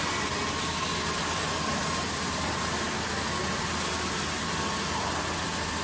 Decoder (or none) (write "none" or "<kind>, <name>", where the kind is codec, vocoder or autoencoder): none